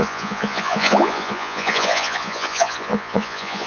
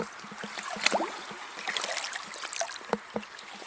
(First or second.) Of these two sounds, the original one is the second